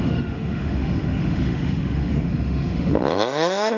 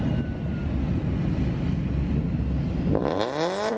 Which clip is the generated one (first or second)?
first